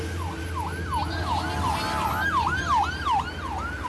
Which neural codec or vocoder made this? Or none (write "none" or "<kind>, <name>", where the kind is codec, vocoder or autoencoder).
none